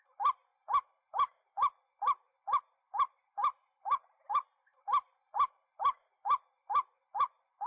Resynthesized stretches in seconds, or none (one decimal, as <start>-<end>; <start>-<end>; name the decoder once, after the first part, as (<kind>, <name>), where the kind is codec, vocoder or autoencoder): 0.5-1.5 (vocoder, BigVGAN v2); 3.4-6.9

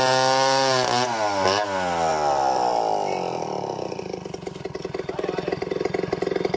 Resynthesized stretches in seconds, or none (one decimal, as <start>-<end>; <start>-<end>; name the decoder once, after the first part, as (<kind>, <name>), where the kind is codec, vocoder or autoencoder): none

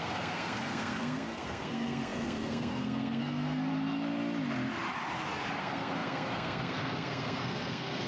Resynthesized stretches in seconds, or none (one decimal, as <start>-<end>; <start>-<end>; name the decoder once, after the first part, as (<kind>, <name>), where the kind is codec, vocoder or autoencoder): 0.0-3.7 (codec, SNAC); 5.6-8.1

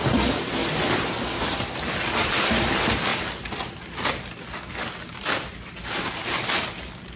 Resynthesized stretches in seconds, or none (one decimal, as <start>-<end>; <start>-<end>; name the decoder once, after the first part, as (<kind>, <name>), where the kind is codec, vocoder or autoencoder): none

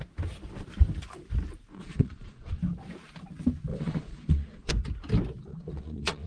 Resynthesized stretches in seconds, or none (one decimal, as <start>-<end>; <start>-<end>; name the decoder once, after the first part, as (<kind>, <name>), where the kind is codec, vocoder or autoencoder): 1.7-2.6 (vocoder, Vocos); 3.7-4.7; 5.5-6.3

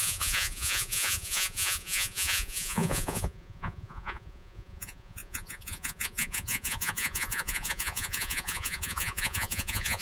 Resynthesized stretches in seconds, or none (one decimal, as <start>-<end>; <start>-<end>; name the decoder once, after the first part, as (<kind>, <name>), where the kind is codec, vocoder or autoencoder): 0.0-10.0 (vocoder, Vocos)

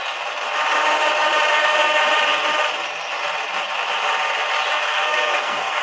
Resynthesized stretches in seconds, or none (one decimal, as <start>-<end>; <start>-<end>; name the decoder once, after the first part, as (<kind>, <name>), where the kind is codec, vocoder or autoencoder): 1.5-2.0 (codec, SNAC); 4.7-5.8

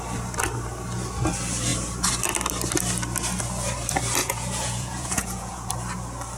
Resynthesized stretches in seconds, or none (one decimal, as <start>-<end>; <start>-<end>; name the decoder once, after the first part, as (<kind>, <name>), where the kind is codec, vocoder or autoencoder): 4.2-5.7 (vocoder, Vocos)